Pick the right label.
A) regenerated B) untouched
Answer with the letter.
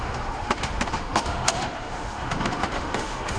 A